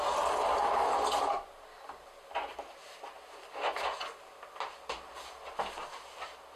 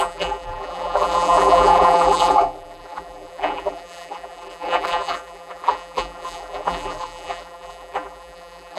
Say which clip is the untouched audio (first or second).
first